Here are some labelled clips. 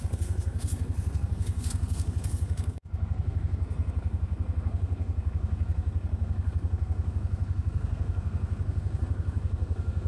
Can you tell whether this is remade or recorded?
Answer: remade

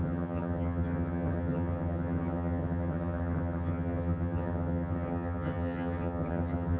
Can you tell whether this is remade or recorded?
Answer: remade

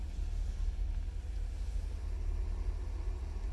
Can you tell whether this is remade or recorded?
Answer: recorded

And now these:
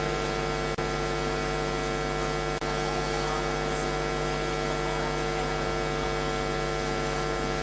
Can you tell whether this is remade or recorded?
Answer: recorded